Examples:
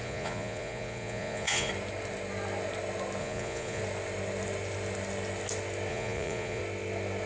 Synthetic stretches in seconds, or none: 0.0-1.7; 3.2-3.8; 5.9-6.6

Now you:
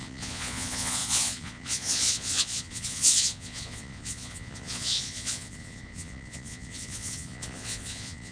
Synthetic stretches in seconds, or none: 0.0-8.3